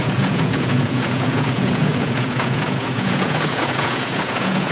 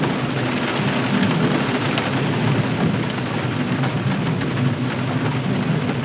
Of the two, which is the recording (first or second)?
second